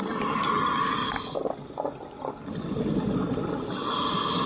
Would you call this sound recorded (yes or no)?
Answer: yes